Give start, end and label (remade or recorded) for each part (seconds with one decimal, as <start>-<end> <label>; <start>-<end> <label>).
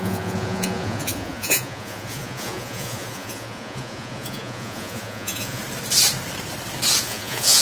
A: 0.0-5.6 remade; 5.6-7.0 recorded; 7.0-7.6 remade